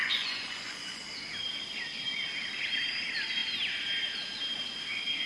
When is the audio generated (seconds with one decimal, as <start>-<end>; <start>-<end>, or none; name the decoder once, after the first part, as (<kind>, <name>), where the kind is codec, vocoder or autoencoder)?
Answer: 0.0-1.0 (vocoder, Vocos)